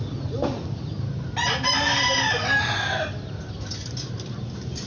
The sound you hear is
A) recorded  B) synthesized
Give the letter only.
A